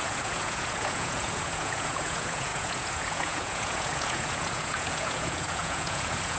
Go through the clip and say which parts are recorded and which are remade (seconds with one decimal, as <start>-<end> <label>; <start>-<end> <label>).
0.0-6.4 remade